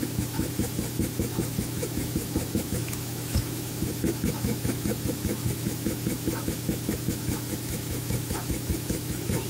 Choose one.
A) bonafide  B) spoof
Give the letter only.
B